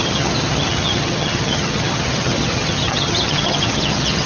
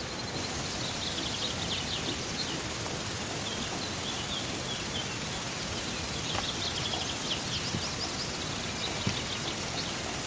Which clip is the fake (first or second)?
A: first